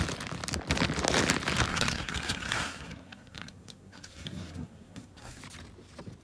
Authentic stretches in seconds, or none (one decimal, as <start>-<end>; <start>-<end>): 0.0-1.7; 5.4-6.2